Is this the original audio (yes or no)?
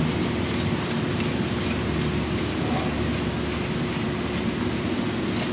yes